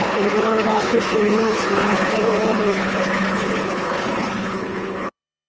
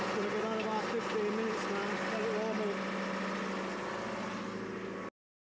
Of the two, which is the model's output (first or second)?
first